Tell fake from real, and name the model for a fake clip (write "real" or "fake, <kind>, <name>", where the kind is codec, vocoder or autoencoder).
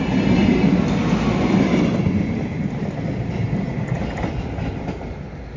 real